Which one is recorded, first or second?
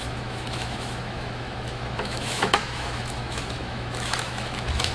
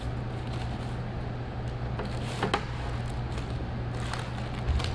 second